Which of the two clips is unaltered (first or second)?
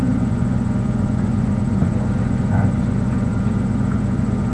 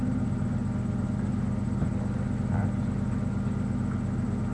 second